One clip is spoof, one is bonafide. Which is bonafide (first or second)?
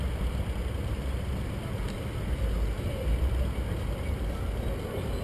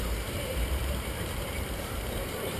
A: first